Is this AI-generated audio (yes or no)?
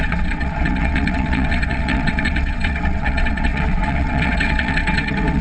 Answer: yes